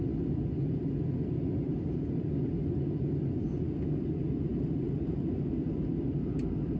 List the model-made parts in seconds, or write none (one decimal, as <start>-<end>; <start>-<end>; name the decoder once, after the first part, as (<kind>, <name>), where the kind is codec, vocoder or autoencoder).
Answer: 1.7-2.5 (vocoder, BigVGAN v2); 4.5-5.9